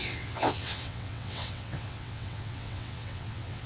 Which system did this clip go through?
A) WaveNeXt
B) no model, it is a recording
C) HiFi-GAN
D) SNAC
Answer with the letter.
A